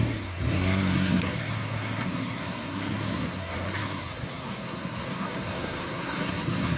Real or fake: fake